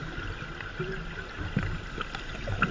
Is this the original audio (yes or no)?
yes